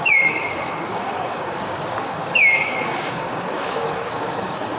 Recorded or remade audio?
remade